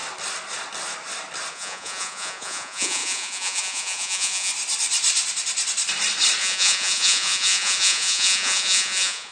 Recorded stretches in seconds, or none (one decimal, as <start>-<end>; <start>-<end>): 0.0-1.5; 4.5-6.4